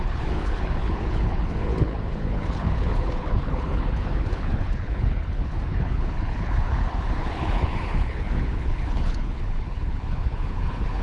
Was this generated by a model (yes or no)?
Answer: yes